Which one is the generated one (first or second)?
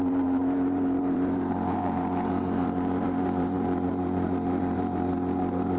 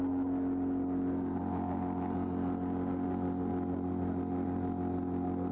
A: first